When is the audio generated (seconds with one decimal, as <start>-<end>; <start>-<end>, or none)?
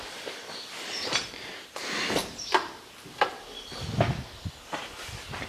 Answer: none